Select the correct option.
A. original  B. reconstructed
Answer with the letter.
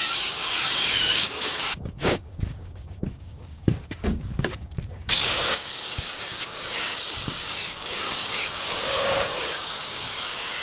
B